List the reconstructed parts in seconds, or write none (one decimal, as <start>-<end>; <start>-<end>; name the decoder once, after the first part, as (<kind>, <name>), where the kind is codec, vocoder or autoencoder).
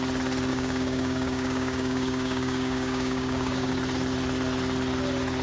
0.5-3.7 (codec, DAC)